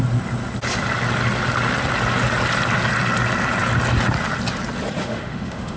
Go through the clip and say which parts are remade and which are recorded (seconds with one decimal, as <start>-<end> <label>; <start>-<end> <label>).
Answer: 0.0-5.0 recorded; 5.0-5.8 remade